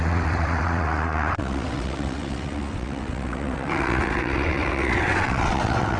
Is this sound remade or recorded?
remade